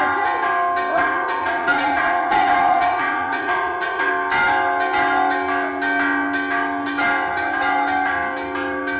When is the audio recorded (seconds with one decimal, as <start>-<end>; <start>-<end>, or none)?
0.0-0.9; 4.1-9.0